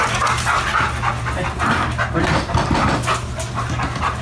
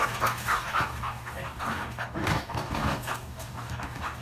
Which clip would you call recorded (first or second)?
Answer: first